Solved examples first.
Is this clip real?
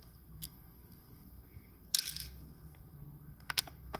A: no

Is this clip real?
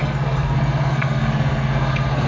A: no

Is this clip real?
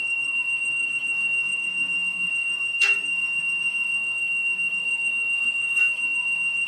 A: no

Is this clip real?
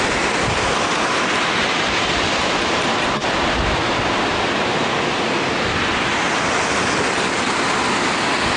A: yes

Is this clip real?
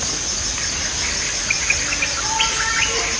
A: yes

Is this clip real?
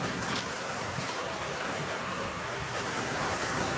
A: no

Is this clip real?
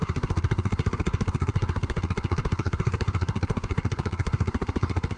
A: no